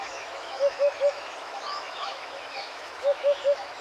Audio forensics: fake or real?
fake